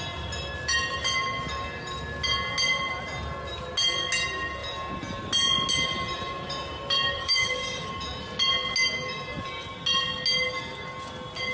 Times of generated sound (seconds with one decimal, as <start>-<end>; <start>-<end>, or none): 7.2-7.9